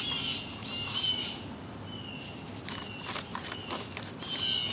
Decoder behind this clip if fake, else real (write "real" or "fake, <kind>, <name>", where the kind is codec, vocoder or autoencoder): real